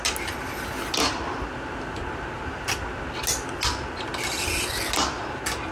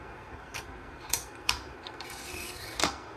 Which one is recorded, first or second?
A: first